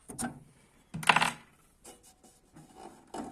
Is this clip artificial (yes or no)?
no